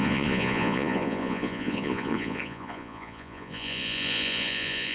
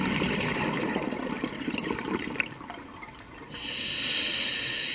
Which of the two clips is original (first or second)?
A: second